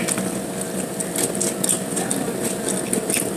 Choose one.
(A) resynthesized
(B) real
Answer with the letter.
B